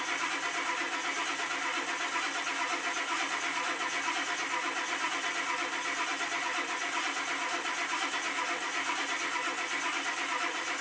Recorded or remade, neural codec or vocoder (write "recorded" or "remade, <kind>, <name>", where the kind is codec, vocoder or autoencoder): recorded